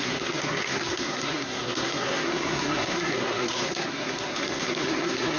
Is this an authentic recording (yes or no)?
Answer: no